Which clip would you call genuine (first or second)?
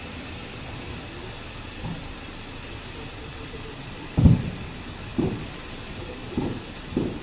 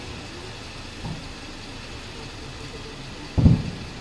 second